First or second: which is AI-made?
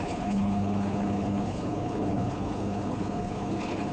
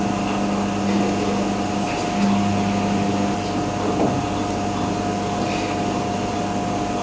first